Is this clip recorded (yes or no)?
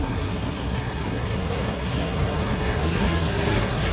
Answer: no